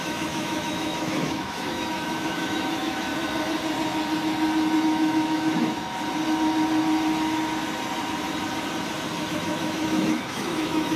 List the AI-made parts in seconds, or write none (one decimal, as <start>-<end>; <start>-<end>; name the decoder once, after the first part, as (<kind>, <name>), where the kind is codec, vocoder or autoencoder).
0.0-3.1 (autoencoder, DAC-VAE); 4.8-5.8; 9.3-11.0